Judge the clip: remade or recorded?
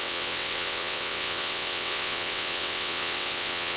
remade